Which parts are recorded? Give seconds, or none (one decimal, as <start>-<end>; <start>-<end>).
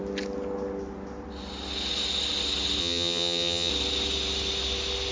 0.0-2.8; 3.7-5.1